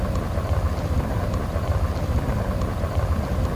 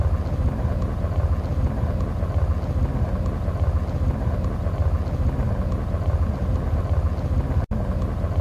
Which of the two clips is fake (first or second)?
first